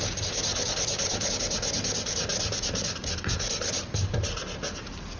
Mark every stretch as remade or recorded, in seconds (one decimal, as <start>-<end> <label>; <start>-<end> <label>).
0.0-0.5 recorded; 0.5-1.3 remade; 1.3-2.3 recorded; 2.3-5.2 remade